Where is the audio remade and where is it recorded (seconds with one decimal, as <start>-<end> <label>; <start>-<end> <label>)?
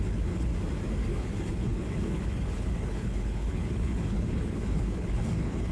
0.0-0.5 remade; 0.5-1.1 recorded; 1.1-5.7 remade